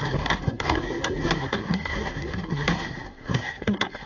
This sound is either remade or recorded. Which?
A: remade